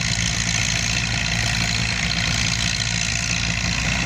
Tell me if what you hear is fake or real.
real